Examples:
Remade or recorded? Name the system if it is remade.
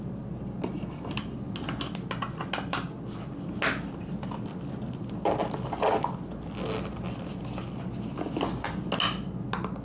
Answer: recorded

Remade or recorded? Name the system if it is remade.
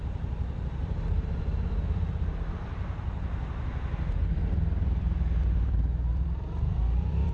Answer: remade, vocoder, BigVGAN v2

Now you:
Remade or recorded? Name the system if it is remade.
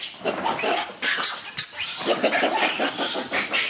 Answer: recorded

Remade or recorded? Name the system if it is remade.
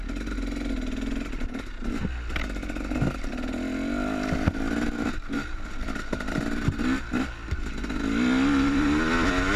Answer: recorded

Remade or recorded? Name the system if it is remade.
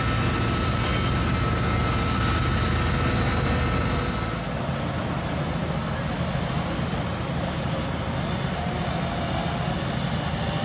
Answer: recorded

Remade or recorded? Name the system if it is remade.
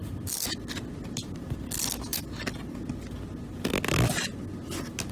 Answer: recorded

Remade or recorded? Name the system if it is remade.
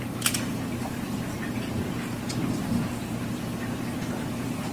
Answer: remade, vocoder, BigVGAN v2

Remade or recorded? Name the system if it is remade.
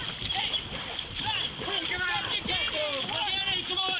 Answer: remade, vocoder, BigVGAN v2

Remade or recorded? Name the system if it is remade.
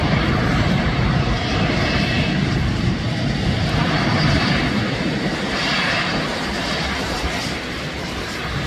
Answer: remade, vocoder, BigVGAN v2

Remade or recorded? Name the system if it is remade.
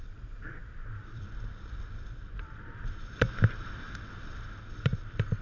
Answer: remade, vocoder, BigVGAN v2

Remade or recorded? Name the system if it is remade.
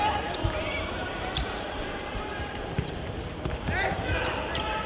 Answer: remade, vocoder, BigVGAN v2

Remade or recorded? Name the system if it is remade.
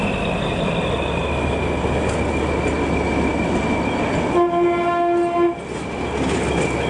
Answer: recorded